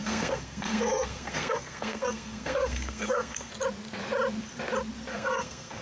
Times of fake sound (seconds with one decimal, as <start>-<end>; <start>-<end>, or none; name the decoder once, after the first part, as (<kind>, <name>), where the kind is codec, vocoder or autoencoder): 0.0-3.5 (codec, SNAC); 5.1-5.8